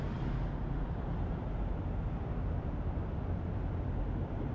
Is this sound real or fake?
real